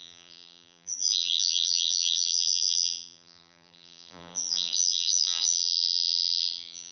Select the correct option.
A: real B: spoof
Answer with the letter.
B